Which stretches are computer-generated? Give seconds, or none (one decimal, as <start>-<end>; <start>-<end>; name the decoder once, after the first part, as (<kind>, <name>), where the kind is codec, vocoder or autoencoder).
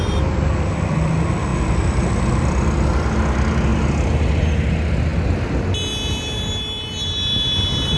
none